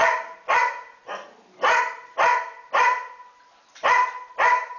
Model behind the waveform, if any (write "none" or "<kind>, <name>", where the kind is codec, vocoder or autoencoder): none